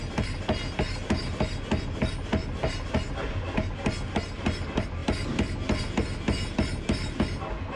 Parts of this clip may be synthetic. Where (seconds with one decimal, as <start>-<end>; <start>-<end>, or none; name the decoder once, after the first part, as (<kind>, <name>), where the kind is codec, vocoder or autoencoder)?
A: none